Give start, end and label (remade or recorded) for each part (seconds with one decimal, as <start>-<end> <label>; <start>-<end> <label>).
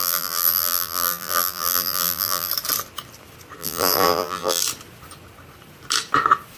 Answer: 0.0-2.5 remade; 2.5-3.6 recorded; 3.6-4.6 remade; 4.6-6.6 recorded